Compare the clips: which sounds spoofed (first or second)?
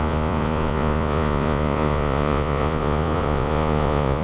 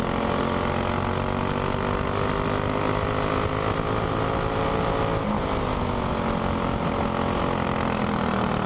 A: first